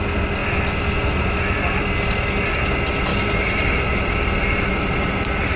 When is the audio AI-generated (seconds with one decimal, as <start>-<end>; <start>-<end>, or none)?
3.1-5.6